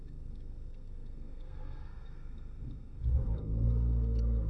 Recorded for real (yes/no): no